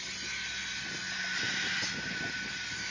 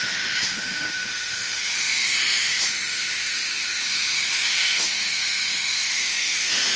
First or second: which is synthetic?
second